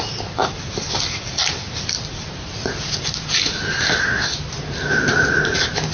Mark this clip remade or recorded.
recorded